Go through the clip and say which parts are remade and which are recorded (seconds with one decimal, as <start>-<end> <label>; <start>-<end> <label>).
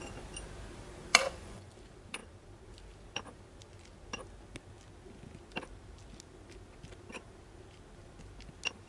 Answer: 0.0-1.1 recorded; 1.1-1.7 remade; 1.7-8.9 recorded